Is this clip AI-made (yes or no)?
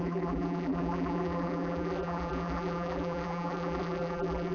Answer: yes